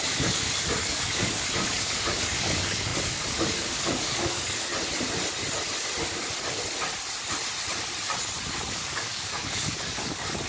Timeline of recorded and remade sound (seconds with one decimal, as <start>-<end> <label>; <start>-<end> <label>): 0.0-4.7 remade; 4.7-8.7 recorded; 8.7-10.5 remade